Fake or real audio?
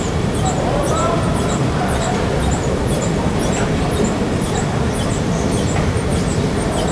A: fake